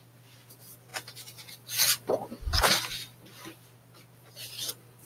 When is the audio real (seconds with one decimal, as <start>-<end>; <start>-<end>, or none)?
0.0-5.0